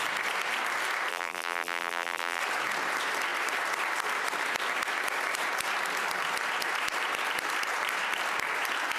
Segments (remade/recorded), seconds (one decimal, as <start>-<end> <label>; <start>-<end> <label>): 0.0-1.1 recorded; 1.1-2.4 remade; 2.4-9.0 recorded